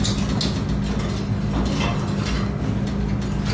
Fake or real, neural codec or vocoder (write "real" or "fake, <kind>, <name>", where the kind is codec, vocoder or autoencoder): real